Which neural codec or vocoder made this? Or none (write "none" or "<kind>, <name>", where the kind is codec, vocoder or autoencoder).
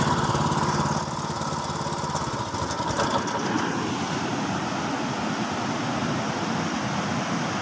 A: none